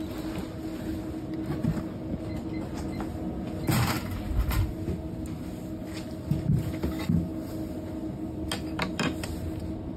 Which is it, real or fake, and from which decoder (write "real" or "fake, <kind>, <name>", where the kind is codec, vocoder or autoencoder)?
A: real